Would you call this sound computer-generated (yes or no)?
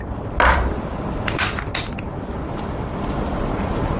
no